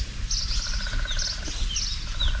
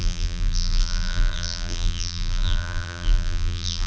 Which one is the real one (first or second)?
first